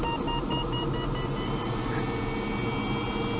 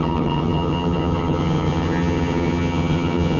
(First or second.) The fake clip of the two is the second